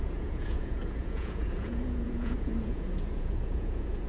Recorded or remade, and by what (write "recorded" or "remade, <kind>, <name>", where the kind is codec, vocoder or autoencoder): remade, vocoder, Vocos